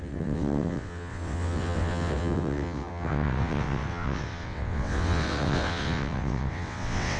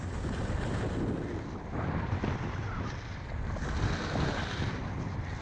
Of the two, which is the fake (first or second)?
first